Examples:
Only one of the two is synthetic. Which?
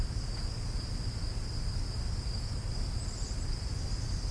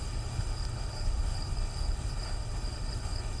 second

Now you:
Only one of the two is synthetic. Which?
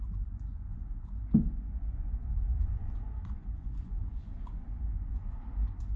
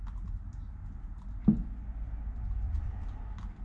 first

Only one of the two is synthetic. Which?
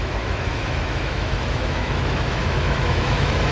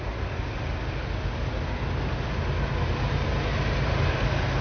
first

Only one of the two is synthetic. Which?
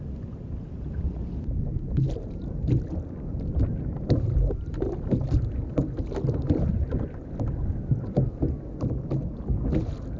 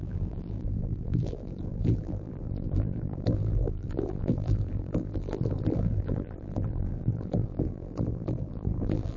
second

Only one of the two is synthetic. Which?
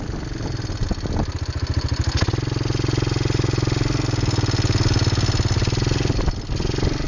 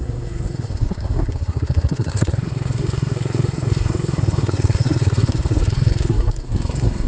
second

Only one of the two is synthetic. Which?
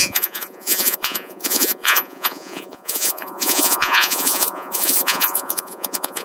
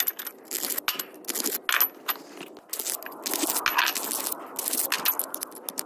first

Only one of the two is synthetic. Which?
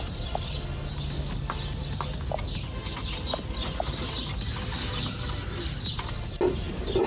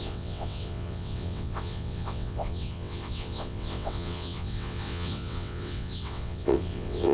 second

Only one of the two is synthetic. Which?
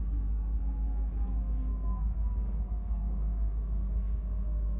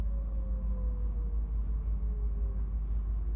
first